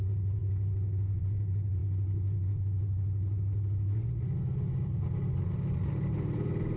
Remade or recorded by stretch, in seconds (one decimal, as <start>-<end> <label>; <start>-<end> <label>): 0.0-6.8 recorded